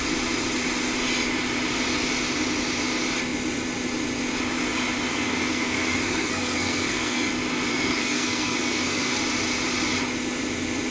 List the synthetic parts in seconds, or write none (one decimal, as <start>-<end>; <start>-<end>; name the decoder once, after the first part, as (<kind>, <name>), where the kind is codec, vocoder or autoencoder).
5.1-7.3 (codec, SNAC); 7.7-9.2